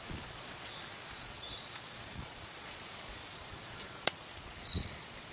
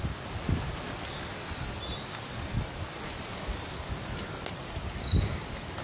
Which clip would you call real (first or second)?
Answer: second